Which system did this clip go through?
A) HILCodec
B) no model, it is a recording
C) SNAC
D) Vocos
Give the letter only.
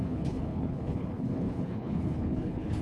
A